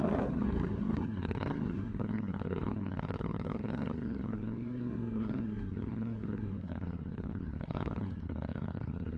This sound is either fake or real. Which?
fake